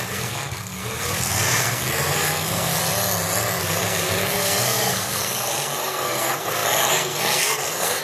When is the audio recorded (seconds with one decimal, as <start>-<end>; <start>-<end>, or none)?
2.8-3.6